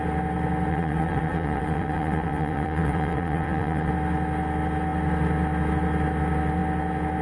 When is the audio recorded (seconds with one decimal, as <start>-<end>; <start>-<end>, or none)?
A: 0.0-0.7; 3.9-7.2